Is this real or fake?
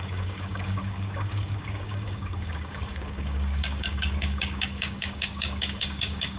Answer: fake